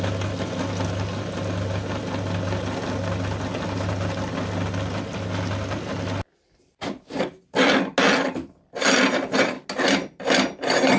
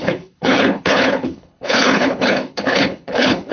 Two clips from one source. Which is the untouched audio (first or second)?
first